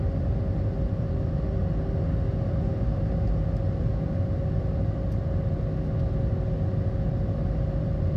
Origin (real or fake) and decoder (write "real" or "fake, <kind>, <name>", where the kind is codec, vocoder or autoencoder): real